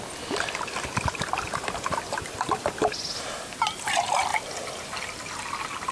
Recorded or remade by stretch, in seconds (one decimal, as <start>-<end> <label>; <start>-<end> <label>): 0.0-1.9 recorded; 1.9-2.7 remade; 2.7-4.3 recorded; 4.3-5.4 remade; 5.4-5.9 recorded